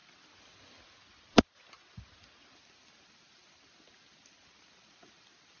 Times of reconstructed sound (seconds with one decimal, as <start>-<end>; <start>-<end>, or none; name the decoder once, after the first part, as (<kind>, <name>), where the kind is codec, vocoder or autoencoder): none